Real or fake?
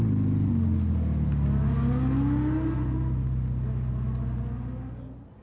real